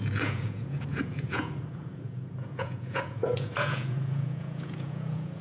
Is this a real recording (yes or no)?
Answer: no